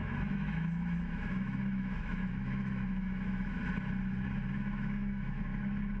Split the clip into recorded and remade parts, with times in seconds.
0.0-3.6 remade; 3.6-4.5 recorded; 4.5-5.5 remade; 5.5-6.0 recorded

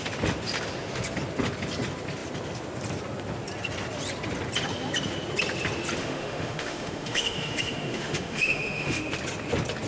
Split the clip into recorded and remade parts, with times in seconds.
0.0-6.0 recorded; 6.0-9.1 remade; 9.1-9.9 recorded

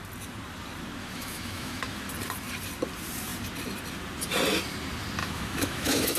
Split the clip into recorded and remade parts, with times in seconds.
0.0-1.0 recorded; 1.0-2.1 remade; 2.1-5.2 recorded; 5.2-6.2 remade